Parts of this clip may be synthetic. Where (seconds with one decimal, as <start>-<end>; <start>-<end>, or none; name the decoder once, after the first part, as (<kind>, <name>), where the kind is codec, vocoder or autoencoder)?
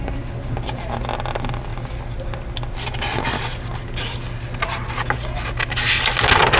none